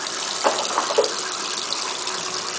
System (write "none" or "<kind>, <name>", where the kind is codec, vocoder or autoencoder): none